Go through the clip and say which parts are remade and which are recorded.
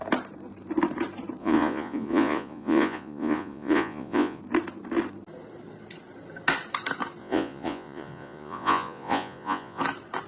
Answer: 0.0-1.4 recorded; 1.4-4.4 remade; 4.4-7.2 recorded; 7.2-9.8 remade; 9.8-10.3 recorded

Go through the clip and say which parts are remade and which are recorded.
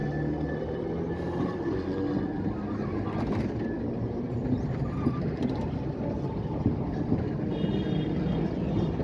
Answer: 0.0-9.0 recorded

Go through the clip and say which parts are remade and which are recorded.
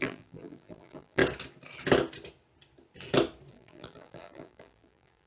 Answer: 0.0-1.2 remade; 1.2-3.5 recorded; 3.5-5.3 remade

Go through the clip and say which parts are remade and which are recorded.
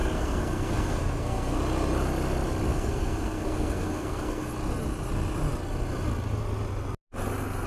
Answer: 0.0-1.6 remade; 1.6-2.7 recorded; 2.7-4.5 remade; 4.5-7.7 recorded